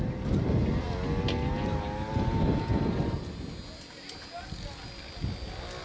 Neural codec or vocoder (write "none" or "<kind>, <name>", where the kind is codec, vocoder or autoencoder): none